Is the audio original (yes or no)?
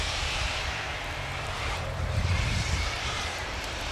no